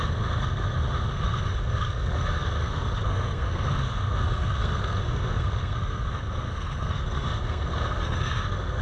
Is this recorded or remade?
remade